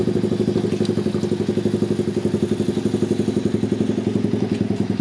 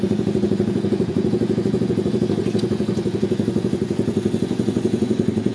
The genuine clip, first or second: first